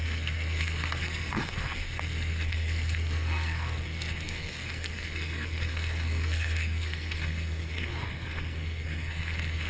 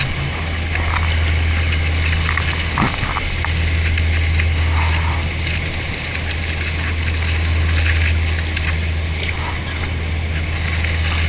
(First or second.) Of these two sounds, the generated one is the first